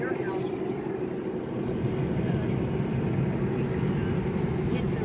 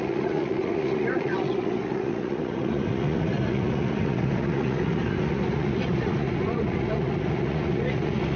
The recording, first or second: first